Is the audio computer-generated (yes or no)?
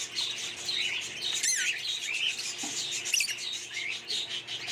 no